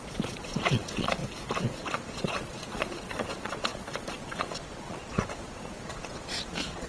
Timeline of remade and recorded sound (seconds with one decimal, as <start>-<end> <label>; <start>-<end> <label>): 0.0-1.2 remade; 1.2-1.8 recorded; 1.8-6.9 remade